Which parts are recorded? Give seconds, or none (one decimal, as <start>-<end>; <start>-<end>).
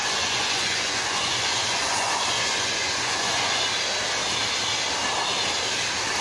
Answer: 3.7-6.2